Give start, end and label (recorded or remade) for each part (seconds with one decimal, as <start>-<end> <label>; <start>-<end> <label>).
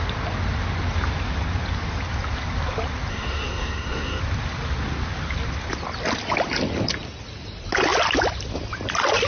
0.0-3.1 recorded; 3.1-4.2 remade; 4.2-9.3 recorded